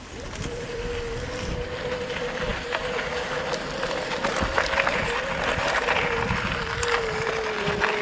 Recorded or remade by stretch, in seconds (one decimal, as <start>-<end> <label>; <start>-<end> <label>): 0.0-8.0 recorded

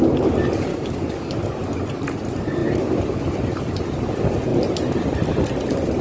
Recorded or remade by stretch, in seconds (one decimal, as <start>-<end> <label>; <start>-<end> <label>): 0.0-0.7 recorded; 0.7-1.6 remade; 1.6-6.0 recorded

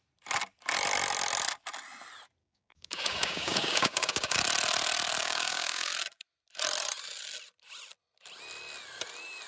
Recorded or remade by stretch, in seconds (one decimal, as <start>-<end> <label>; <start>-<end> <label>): 0.0-2.4 recorded; 2.4-4.4 remade; 4.4-5.2 recorded; 5.2-5.9 remade; 5.9-9.5 recorded

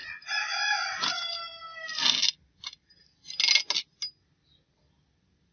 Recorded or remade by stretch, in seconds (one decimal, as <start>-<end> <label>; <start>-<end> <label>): 0.0-5.5 recorded

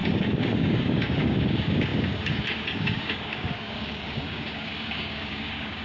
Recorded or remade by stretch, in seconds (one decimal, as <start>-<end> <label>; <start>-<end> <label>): 0.0-5.8 remade